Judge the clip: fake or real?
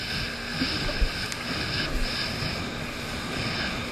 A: real